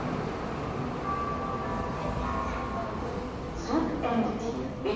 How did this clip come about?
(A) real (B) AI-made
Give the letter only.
A